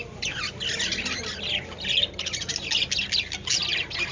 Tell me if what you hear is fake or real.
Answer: real